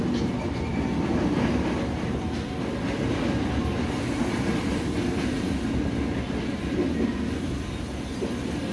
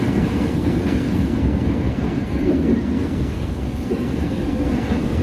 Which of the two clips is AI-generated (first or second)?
second